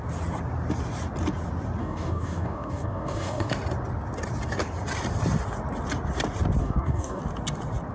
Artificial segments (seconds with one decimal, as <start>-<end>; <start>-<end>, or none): 1.8-3.5; 6.6-7.2